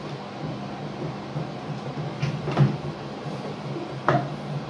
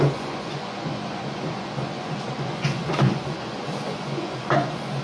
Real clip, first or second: first